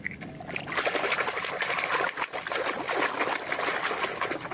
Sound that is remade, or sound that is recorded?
recorded